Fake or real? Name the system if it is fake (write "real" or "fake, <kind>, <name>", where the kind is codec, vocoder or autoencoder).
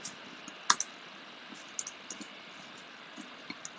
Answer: real